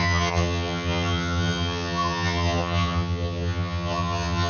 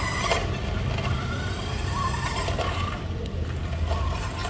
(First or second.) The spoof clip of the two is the first